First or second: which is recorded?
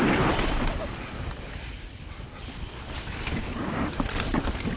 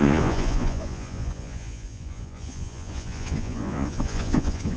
first